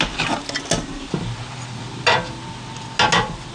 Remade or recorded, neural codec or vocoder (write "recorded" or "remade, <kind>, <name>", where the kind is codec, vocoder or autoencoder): recorded